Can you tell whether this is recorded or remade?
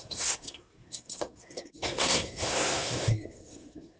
remade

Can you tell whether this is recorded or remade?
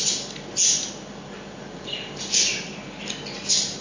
recorded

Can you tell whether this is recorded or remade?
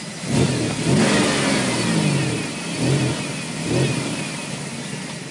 recorded